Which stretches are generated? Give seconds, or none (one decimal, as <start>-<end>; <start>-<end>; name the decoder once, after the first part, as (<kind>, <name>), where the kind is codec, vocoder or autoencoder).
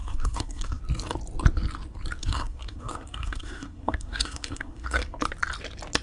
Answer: 0.0-0.8 (codec, SNAC); 2.2-5.2